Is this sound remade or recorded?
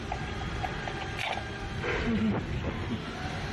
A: recorded